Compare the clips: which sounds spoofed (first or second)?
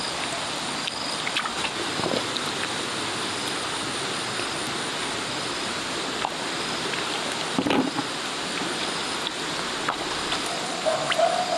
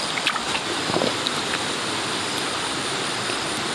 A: second